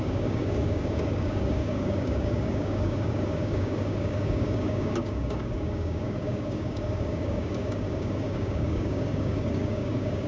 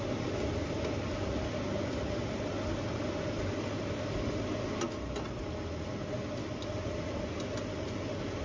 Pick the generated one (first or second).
first